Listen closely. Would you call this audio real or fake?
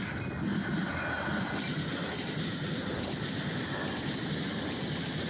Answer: real